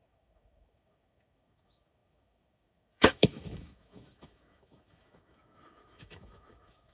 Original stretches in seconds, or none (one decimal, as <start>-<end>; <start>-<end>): none